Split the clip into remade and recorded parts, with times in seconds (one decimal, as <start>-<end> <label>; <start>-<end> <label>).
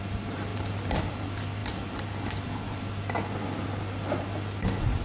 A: 0.0-5.0 recorded